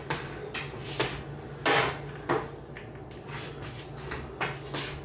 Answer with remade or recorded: recorded